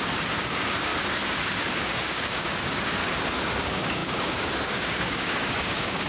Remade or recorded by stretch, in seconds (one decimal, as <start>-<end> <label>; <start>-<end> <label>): 0.0-0.9 remade; 0.9-1.8 recorded; 1.8-3.0 remade; 3.0-3.6 recorded; 3.6-6.1 remade